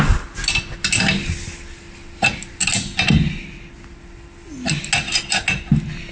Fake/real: real